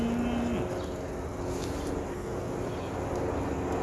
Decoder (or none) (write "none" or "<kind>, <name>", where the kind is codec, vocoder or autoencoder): none